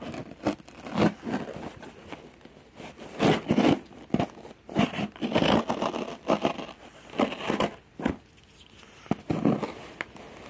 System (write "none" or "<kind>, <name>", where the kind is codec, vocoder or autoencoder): none